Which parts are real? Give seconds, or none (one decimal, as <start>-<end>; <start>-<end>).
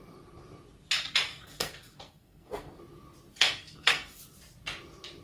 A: 0.0-1.3; 2.8-3.4; 4.2-5.2